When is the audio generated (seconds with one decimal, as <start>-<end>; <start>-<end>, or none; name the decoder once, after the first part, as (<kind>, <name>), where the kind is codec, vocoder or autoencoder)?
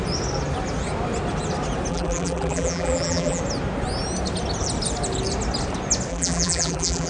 1.9-3.4 (vocoder, BigVGAN v2); 6.1-7.1